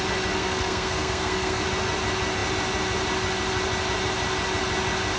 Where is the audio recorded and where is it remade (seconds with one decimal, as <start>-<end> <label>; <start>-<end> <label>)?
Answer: 0.0-0.4 recorded; 0.4-1.6 remade; 1.6-5.2 recorded